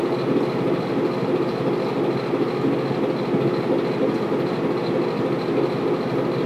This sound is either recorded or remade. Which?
recorded